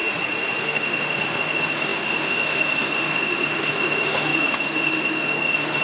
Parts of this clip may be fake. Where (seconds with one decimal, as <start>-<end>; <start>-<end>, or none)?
0.6-5.8